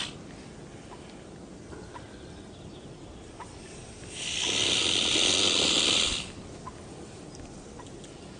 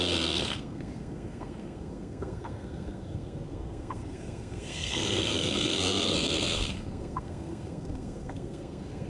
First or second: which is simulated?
second